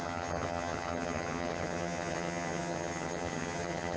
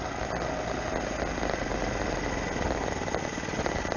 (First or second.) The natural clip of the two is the second